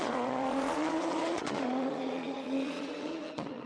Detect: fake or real fake